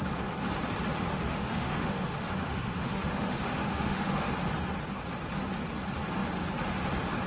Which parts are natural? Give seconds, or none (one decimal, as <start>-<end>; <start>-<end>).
0.0-1.1; 4.3-7.3